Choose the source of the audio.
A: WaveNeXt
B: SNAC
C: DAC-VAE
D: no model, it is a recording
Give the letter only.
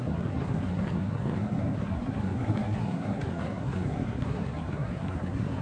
B